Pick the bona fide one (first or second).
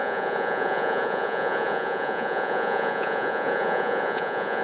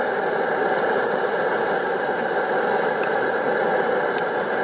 second